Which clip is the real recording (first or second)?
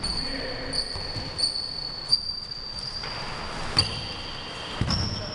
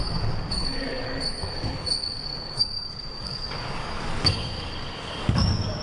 first